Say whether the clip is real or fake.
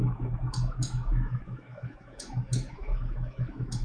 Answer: fake